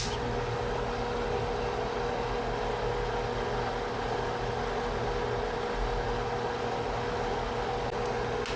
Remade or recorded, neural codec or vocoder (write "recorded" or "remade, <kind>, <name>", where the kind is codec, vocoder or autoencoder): recorded